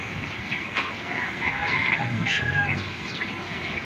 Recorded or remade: remade